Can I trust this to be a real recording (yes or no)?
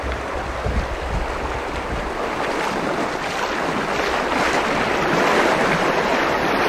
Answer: yes